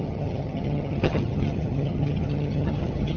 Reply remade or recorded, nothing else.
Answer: remade